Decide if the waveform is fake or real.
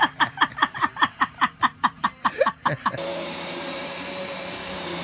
fake